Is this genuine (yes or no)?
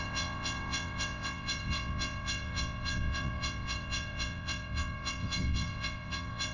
no